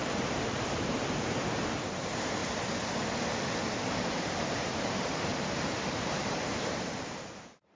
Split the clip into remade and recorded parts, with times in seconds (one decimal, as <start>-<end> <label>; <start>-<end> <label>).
0.0-2.4 remade; 2.4-3.8 recorded; 3.8-7.8 remade